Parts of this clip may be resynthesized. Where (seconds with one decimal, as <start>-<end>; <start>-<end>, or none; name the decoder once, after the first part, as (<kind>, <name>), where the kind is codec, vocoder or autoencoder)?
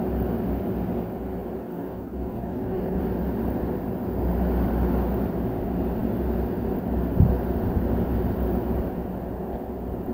1.7-3.0 (codec, DAC)